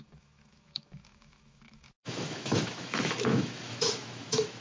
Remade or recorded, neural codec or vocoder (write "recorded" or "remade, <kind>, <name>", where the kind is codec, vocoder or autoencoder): remade, autoencoder, DAC-VAE